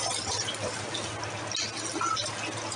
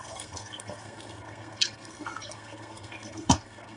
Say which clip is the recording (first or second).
first